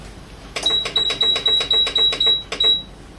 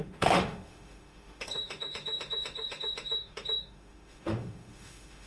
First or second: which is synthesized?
second